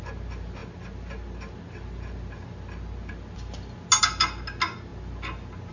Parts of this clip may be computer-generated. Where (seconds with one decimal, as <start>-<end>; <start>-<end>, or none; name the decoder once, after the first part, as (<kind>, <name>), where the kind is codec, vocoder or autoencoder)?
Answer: none